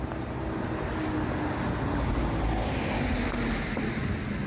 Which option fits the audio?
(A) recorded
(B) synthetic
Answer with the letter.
A